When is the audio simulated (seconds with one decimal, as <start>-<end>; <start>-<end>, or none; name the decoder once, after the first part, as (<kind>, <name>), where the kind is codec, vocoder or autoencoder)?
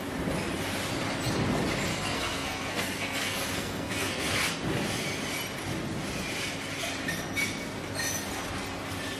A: 1.9-4.5 (codec, SNAC)